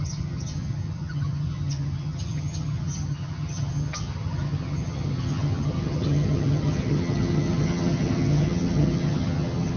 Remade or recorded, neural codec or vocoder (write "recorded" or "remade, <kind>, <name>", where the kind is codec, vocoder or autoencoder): remade, vocoder, HiFi-GAN